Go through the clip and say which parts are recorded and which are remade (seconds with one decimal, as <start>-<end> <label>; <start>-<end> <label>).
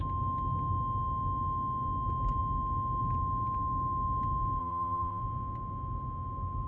0.0-4.6 recorded; 4.6-5.2 remade; 5.2-6.7 recorded